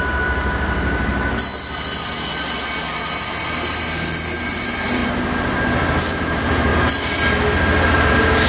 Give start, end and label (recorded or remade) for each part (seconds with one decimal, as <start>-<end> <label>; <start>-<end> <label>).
0.0-1.1 remade; 1.1-4.5 recorded; 4.5-5.0 remade; 5.0-6.0 recorded; 6.0-6.7 remade; 6.7-8.1 recorded; 8.1-8.5 remade

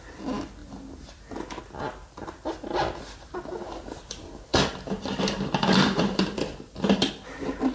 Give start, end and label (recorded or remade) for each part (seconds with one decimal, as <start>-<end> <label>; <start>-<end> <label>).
0.0-4.5 recorded; 4.5-7.1 remade; 7.1-7.7 recorded

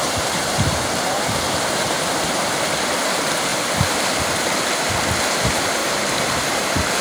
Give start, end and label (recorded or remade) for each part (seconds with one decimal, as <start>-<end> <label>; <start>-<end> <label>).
0.0-2.5 remade; 2.5-3.5 recorded; 3.5-4.2 remade; 4.2-5.8 recorded; 5.8-6.6 remade; 6.6-7.0 recorded

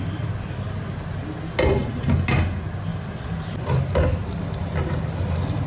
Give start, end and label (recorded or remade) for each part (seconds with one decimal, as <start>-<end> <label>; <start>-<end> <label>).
0.0-2.9 recorded; 2.9-4.2 remade; 4.2-5.7 recorded

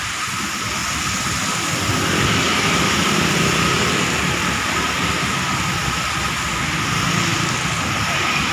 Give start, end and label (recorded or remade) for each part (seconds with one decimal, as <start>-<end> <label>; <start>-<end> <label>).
0.0-7.3 recorded; 7.3-8.1 remade; 8.1-8.5 recorded

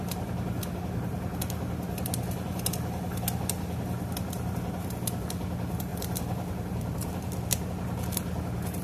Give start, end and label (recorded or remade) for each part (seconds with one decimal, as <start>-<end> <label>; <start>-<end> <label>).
0.0-5.9 recorded; 5.9-7.7 remade; 7.7-8.8 recorded

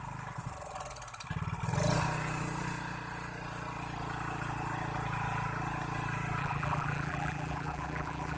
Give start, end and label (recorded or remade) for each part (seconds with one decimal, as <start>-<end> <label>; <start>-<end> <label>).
0.0-6.4 recorded; 6.4-8.4 remade